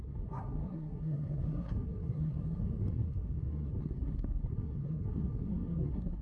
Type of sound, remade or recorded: remade